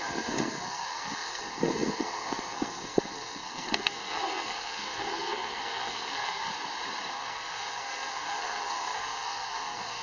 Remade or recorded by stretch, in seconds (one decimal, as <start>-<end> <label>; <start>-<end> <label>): 0.0-6.5 remade; 6.5-7.1 recorded; 7.1-10.0 remade